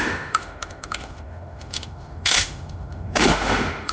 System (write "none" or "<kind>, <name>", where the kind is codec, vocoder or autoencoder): autoencoder, DAC-VAE